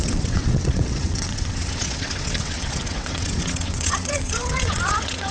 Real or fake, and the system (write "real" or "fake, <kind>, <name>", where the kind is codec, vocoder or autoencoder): fake, vocoder, WaveNeXt